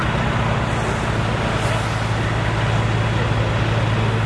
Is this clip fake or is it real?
real